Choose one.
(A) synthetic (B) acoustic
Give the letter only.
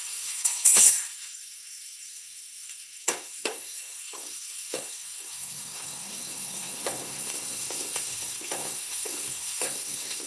A